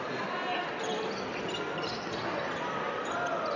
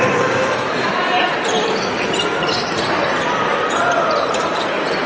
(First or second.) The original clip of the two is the first